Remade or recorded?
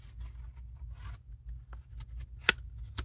recorded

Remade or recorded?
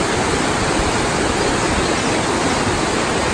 recorded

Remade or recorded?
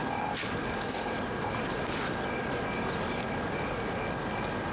recorded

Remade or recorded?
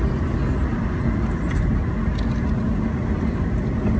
recorded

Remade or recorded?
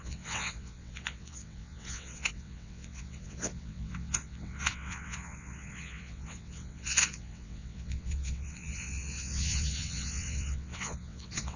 remade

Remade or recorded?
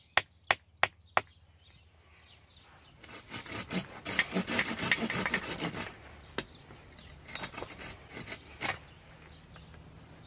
recorded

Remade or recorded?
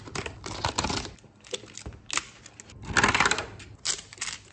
recorded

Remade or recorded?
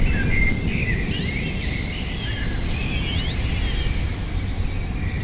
recorded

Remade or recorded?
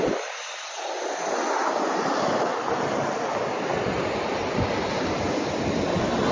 recorded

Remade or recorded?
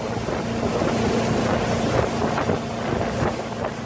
recorded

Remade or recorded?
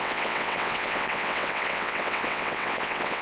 remade